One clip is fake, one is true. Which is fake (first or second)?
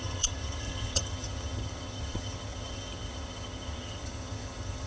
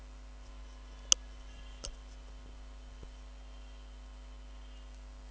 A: first